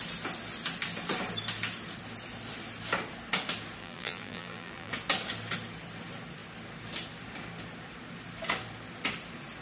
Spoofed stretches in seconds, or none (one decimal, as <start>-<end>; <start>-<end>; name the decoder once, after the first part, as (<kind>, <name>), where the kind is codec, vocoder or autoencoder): 3.8-4.9 (vocoder, BigVGAN v2)